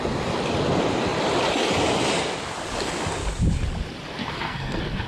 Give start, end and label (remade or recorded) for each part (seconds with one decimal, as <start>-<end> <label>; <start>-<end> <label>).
0.0-4.2 recorded; 4.2-5.1 remade